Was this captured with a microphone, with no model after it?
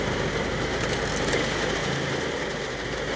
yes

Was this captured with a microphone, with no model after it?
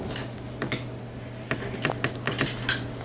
yes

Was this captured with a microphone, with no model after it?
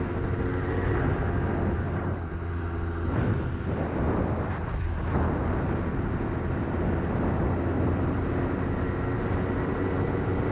yes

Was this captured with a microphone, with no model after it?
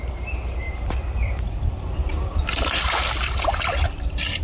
yes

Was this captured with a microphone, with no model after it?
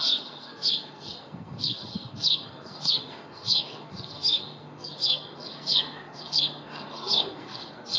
no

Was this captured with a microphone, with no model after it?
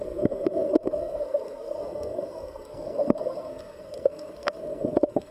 no